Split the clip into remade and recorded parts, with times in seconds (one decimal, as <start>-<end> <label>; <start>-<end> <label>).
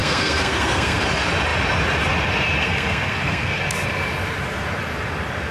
0.0-1.0 remade; 1.0-2.6 recorded; 2.6-3.6 remade; 3.6-5.5 recorded